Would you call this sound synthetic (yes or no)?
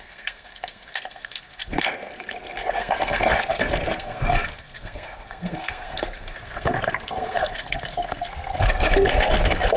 yes